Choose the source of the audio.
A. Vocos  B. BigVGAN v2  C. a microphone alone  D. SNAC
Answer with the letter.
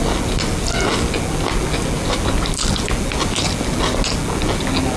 C